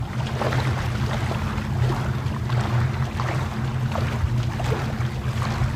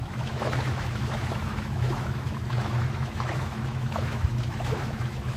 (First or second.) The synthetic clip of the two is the second